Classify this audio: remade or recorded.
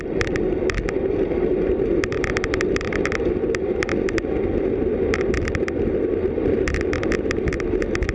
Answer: recorded